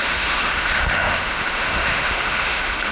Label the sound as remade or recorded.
remade